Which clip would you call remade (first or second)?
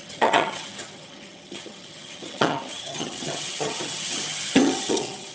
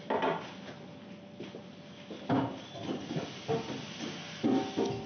first